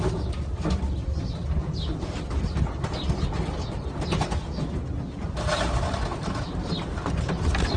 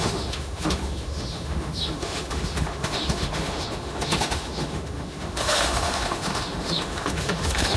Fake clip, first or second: second